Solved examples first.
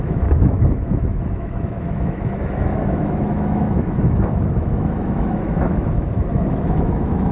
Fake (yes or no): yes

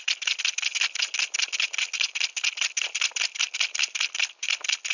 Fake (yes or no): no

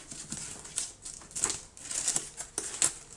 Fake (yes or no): no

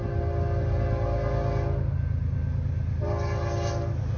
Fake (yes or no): no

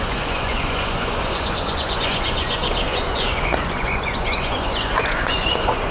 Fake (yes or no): yes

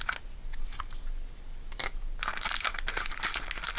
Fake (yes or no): no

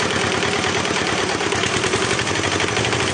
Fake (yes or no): no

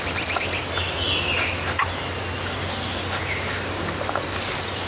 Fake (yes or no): no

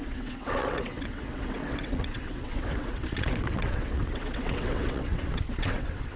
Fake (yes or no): yes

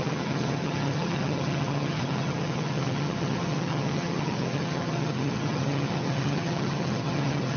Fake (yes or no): yes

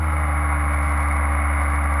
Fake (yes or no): no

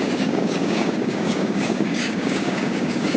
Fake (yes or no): yes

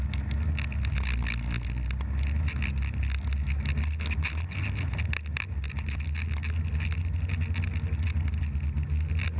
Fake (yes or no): no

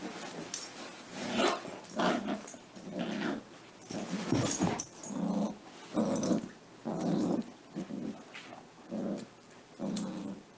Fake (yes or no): no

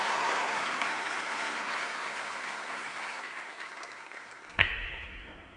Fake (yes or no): yes